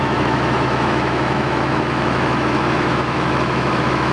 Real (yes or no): no